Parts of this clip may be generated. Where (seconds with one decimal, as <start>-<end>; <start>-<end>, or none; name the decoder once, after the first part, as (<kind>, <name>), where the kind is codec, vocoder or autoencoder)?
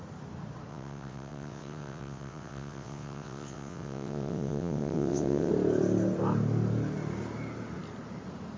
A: 0.7-5.5 (vocoder, WaveNeXt)